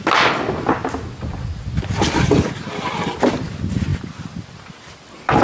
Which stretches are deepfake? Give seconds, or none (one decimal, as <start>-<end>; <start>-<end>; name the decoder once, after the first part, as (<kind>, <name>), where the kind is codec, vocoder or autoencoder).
none